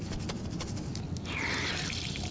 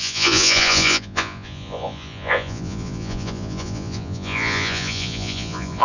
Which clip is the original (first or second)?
first